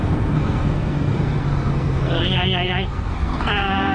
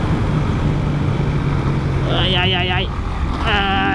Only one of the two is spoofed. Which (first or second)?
first